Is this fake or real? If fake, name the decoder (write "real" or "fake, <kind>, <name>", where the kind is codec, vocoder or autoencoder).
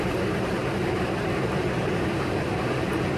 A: fake, vocoder, BigVGAN v2